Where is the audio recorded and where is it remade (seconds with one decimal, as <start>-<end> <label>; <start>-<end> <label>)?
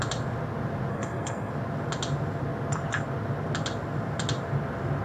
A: 0.0-0.9 recorded; 0.9-1.5 remade; 1.5-5.0 recorded